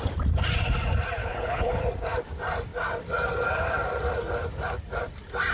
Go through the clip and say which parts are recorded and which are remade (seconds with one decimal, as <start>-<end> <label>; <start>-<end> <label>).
0.0-1.2 recorded; 1.2-1.8 remade; 1.8-5.5 recorded